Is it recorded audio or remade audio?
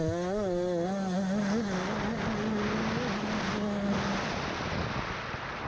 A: recorded